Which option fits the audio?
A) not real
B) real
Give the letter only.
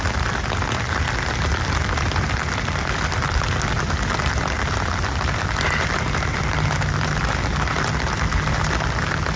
B